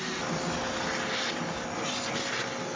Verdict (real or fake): real